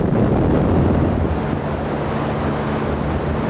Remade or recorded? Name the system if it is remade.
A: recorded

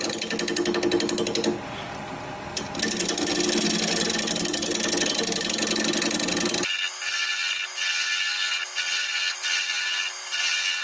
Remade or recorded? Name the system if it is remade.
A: recorded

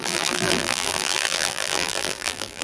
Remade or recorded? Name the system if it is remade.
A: remade, vocoder, BigVGAN v2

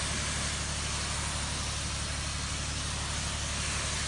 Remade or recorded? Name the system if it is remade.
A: recorded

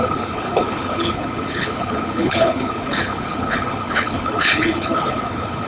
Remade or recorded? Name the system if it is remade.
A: remade, codec, HILCodec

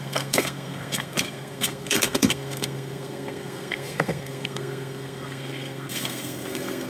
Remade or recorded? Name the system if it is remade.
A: remade, codec, SNAC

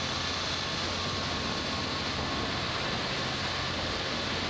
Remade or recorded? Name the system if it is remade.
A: recorded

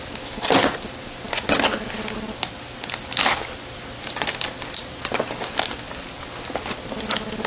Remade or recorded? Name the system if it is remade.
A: recorded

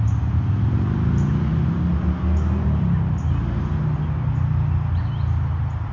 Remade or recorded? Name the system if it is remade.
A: recorded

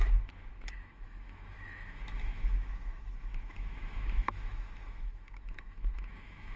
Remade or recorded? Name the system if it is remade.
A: remade, autoencoder, DAC-VAE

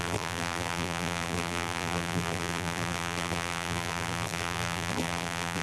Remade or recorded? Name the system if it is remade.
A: remade, vocoder, BigVGAN v2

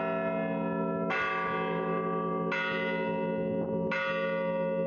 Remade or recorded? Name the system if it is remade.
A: recorded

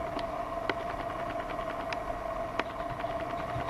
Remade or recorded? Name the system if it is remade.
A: recorded